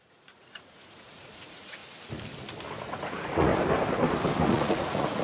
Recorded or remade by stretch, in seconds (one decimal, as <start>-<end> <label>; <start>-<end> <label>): 0.0-1.8 remade; 1.8-2.8 recorded; 2.8-3.5 remade; 3.5-4.5 recorded; 4.5-5.2 remade